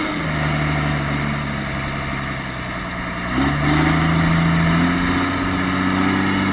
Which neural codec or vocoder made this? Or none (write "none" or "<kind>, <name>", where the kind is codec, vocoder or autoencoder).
none